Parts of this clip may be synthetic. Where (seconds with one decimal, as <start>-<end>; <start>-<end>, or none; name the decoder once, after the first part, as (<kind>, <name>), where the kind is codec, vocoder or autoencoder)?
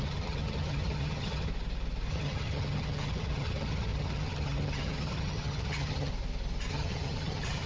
0.0-1.5 (vocoder, HiFi-GAN); 2.1-6.1; 6.7-7.7